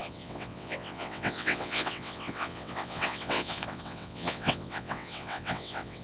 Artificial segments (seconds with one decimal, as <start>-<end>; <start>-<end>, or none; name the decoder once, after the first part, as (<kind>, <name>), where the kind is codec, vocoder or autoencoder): 0.0-6.0 (vocoder, WaveNeXt)

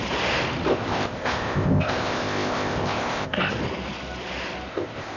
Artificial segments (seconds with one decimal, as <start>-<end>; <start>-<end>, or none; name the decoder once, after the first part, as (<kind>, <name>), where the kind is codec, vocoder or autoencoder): 0.7-3.5 (codec, ZipCodec); 4.7-5.2

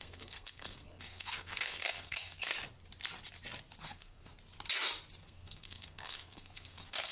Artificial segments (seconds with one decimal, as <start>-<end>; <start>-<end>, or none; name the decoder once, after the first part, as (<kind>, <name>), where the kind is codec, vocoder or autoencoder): 0.0-2.5 (codec, SNAC); 3.8-4.3; 5.2-7.1

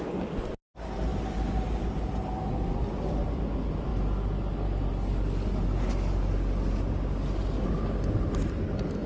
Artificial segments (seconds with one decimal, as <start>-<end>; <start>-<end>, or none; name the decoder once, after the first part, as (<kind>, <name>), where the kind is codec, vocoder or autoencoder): none

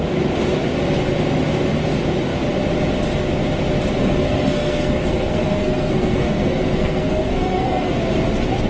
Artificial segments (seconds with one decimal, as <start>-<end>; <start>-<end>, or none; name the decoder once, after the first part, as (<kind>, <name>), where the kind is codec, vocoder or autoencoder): 4.0-7.9 (codec, SNAC)

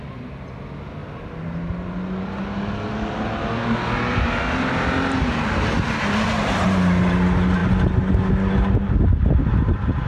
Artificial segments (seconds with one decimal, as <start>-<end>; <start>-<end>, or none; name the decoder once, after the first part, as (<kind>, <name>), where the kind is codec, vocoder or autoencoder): none